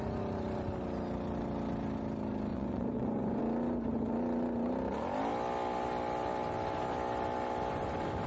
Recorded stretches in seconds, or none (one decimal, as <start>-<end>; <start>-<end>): 0.0-2.5; 3.4-8.3